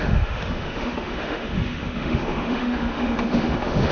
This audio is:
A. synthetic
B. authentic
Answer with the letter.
A